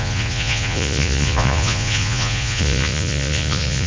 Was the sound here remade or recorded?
remade